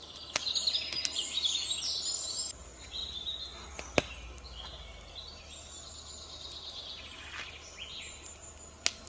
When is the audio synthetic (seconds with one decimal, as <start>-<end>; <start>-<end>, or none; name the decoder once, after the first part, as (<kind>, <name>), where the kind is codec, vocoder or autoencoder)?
none